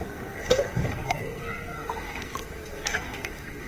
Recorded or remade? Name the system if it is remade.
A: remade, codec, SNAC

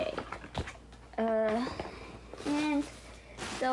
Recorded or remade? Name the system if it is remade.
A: recorded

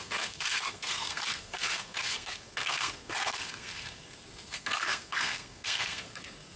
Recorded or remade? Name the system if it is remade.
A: remade, codec, SNAC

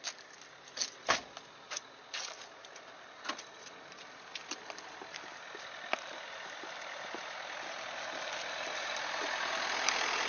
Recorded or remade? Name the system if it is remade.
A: recorded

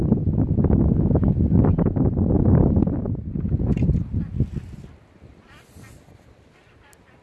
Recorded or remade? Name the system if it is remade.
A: recorded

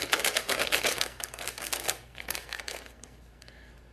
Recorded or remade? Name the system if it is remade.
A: remade, codec, SNAC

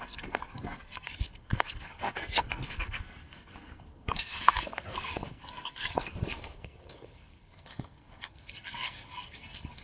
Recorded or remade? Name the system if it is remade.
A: remade, codec, SNAC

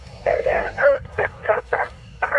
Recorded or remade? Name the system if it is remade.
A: remade, codec, SNAC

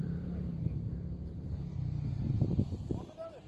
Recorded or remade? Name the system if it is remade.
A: recorded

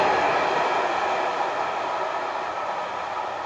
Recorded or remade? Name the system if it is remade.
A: recorded